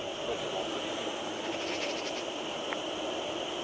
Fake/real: real